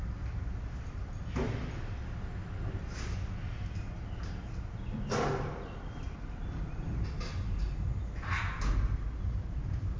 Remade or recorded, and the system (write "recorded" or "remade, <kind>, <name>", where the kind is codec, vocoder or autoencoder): recorded